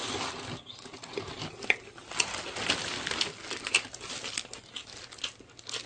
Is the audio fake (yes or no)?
no